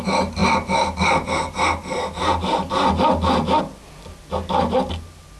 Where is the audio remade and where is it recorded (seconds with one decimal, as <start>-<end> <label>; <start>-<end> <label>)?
0.0-5.4 recorded